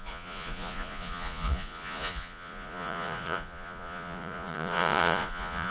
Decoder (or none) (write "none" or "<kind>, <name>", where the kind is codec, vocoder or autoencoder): vocoder, Vocos